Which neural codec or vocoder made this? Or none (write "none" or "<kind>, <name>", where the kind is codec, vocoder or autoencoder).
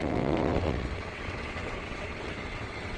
vocoder, WaveNeXt